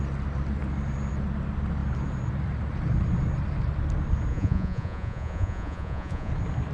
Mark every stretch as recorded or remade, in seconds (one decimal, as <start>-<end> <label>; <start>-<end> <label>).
0.0-4.3 recorded; 4.3-6.3 remade; 6.3-6.7 recorded

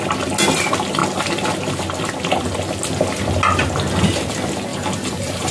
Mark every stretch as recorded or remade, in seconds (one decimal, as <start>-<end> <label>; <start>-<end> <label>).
0.0-4.7 recorded; 4.7-5.5 remade